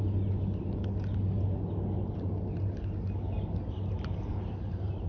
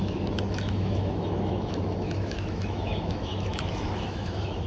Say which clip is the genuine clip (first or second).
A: first